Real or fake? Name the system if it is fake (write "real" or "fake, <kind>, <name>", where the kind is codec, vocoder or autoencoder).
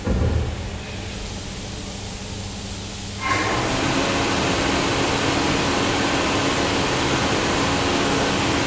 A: real